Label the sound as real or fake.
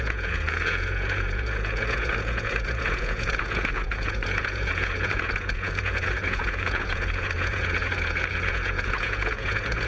fake